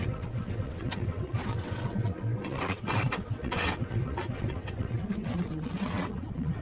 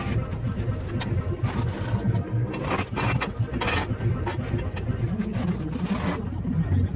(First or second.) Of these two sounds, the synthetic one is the first